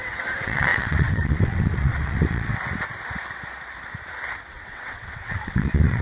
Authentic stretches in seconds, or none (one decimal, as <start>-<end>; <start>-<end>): 2.5-4.5